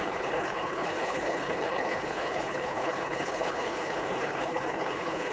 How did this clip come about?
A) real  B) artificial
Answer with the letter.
B